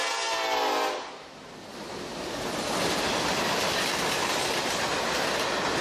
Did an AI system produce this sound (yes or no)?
no